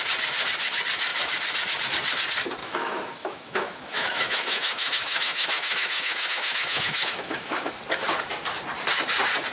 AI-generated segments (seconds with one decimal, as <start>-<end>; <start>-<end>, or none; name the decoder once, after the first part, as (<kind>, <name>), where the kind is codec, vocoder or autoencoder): 2.6-7.7 (autoencoder, DAC-VAE)